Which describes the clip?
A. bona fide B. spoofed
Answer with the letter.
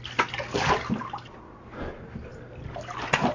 A